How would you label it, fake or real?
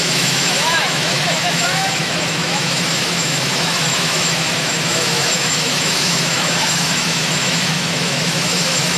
fake